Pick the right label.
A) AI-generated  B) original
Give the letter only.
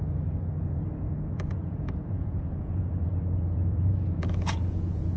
A